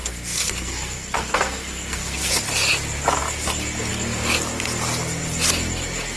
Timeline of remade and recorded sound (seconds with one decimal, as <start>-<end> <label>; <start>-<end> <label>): 0.0-2.3 remade; 2.3-6.2 recorded